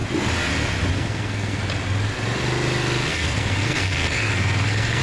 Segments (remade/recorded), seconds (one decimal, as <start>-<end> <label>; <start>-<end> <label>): 0.0-0.9 recorded; 0.9-1.6 remade; 1.6-3.1 recorded; 3.1-5.0 remade